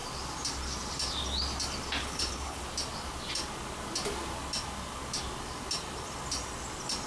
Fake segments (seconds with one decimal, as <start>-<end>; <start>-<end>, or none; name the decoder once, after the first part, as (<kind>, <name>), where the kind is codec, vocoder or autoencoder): 2.0-2.6 (codec, HILCodec)